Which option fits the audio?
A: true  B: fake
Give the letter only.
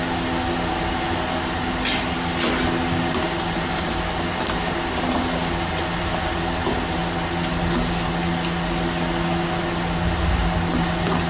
A